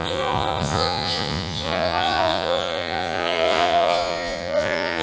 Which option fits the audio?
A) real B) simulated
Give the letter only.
B